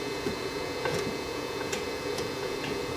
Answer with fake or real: fake